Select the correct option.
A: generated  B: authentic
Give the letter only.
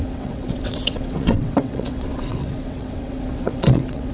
A